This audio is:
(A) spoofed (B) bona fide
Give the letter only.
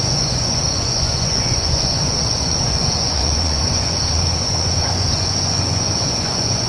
A